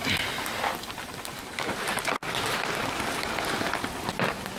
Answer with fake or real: real